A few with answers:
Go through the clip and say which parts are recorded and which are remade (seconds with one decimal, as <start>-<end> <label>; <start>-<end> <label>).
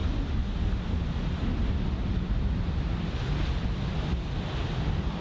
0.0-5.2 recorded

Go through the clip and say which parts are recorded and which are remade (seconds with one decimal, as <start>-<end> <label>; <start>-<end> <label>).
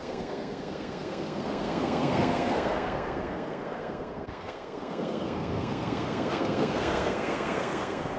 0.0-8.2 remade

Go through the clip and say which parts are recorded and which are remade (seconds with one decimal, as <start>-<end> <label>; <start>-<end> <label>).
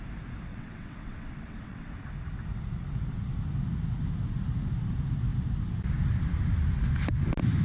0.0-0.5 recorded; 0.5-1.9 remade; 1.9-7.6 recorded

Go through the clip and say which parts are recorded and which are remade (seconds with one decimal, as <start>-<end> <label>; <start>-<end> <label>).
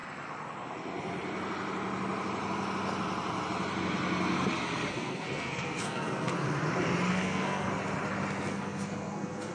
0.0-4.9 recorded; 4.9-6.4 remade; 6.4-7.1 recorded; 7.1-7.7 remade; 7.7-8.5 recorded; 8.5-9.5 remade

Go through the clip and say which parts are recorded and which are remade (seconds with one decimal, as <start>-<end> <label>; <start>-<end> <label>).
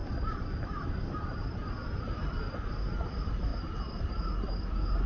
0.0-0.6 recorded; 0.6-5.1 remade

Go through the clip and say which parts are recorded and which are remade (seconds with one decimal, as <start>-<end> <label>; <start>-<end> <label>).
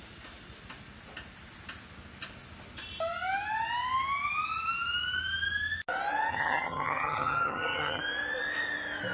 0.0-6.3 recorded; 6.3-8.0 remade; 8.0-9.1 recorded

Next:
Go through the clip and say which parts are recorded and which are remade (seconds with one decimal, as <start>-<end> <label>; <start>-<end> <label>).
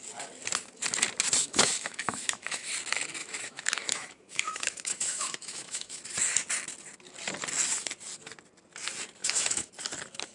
0.0-1.4 recorded; 1.4-2.7 remade; 2.7-3.2 recorded; 3.2-6.0 remade; 6.0-9.2 recorded; 9.2-9.7 remade; 9.7-10.3 recorded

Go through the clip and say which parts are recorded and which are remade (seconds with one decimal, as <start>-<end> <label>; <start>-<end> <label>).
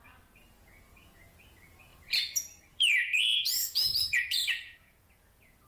0.0-5.7 remade